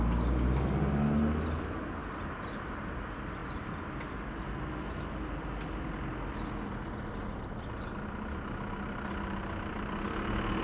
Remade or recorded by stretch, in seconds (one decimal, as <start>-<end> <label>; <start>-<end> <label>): 0.0-10.6 recorded